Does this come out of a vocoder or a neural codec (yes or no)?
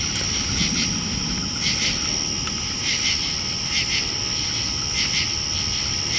no